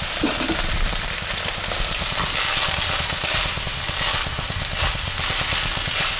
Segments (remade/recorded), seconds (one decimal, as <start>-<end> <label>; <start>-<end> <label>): 0.0-6.2 recorded